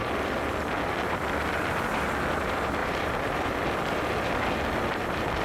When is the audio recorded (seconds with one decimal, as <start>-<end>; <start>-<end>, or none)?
0.0-2.8; 3.5-5.4